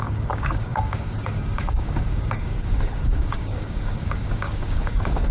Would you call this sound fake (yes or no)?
yes